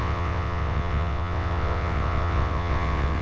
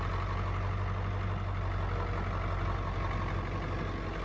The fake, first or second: first